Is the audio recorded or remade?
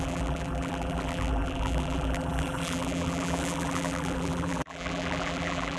remade